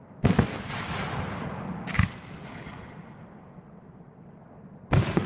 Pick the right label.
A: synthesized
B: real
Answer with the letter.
B